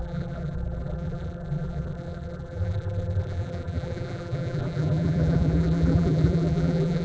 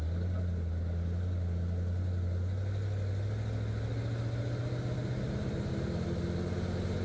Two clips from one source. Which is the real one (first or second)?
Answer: second